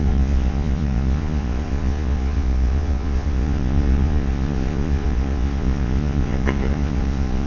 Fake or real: fake